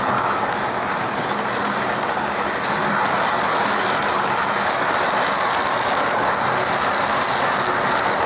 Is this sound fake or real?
real